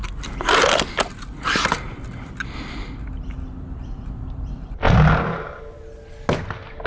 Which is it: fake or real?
real